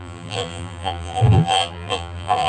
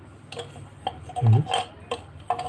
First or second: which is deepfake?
first